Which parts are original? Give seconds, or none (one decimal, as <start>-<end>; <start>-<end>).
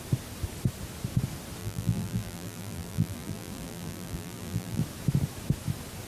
0.0-1.6; 4.8-6.1